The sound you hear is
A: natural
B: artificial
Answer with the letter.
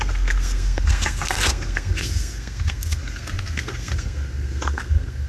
B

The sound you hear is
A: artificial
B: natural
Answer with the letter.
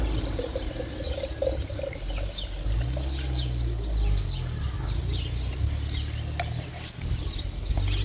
B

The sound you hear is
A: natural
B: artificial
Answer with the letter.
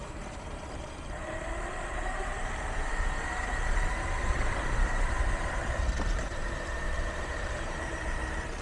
B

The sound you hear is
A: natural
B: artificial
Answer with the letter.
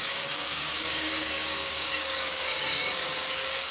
B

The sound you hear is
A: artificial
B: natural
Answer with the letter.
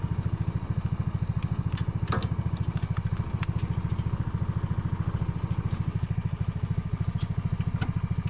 B